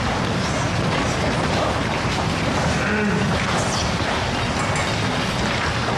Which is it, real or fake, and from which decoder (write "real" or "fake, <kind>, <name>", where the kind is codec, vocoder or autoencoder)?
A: real